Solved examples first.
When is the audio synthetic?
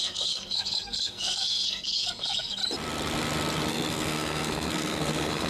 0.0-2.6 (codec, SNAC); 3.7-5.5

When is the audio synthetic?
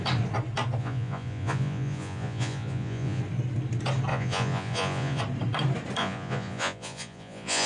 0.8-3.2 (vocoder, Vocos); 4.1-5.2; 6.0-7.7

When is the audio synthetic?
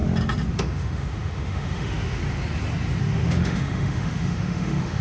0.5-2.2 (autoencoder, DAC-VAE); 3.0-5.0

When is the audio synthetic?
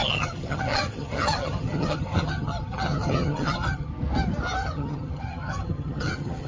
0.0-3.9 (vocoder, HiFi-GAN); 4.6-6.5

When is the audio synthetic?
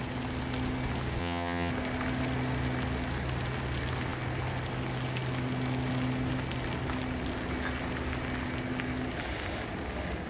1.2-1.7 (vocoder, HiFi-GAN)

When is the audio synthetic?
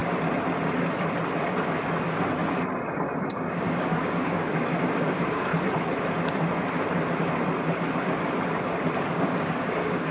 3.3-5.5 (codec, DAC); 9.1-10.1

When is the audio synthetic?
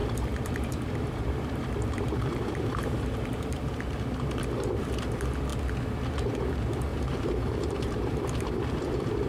0.0-4.4 (vocoder, BigVGAN v2); 6.9-8.7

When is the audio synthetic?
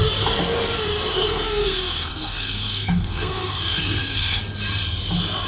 1.1-4.4 (codec, SNAC)